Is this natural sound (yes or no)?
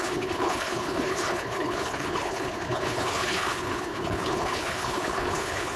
no